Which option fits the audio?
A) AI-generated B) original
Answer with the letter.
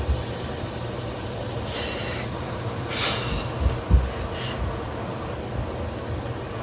B